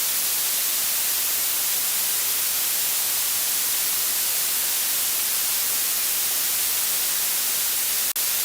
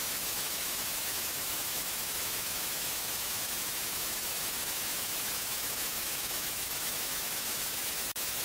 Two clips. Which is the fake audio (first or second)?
second